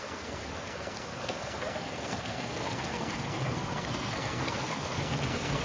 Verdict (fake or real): fake